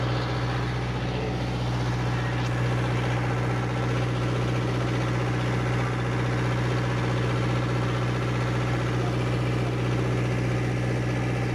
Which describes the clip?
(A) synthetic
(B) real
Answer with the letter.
B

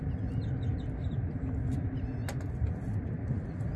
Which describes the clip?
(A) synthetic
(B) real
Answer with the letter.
B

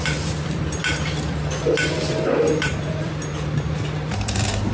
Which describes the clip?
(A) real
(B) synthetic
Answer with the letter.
B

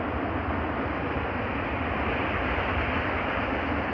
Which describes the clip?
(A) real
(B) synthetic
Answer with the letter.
A